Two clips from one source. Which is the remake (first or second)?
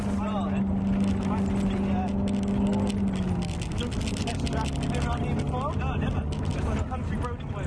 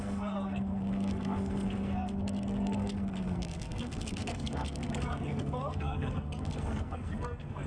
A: second